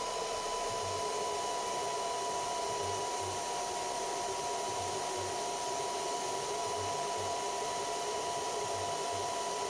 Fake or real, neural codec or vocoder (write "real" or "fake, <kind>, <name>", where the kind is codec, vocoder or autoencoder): real